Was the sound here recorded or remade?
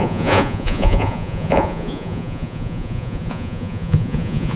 remade